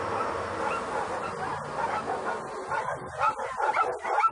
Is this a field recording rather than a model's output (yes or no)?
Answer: yes